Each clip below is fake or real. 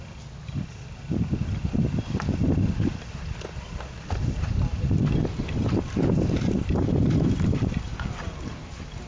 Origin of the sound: real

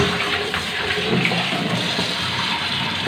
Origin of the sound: fake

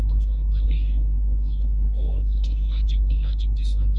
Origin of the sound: fake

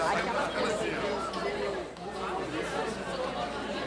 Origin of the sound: real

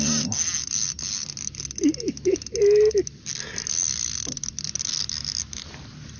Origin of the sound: real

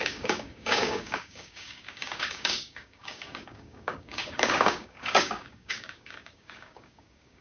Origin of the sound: fake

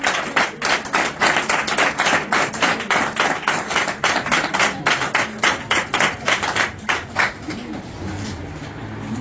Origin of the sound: real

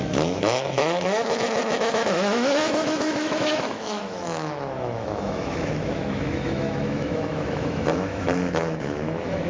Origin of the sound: fake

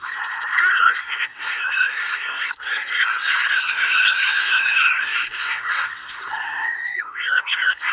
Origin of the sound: fake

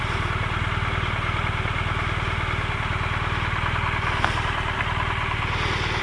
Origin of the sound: real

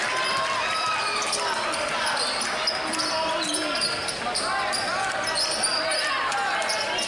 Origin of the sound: real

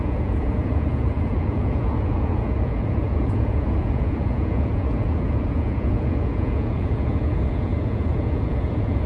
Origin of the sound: fake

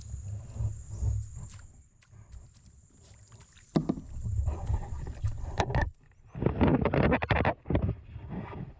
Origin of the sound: real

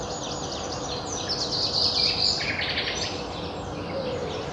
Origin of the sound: real